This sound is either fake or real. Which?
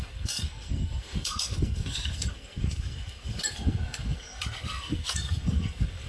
fake